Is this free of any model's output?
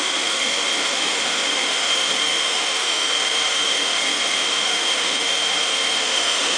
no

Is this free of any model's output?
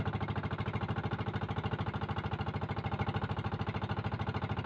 yes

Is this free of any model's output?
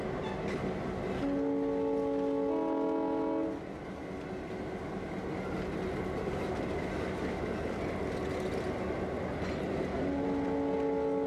yes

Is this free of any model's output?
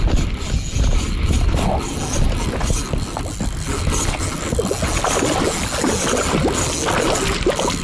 yes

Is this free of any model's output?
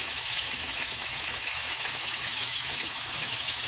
no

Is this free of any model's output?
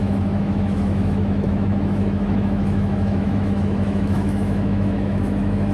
no